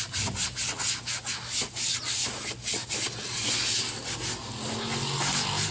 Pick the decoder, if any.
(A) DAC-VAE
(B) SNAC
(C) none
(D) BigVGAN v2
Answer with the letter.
C